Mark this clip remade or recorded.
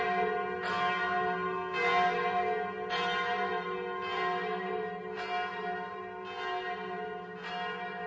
recorded